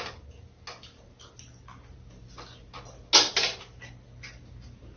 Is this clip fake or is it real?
real